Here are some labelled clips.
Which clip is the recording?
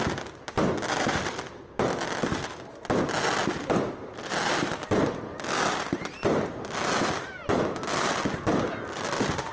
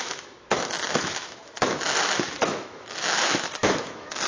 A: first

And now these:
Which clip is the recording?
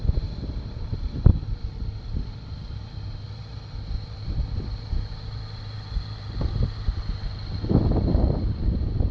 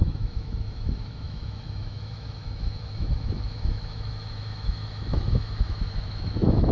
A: first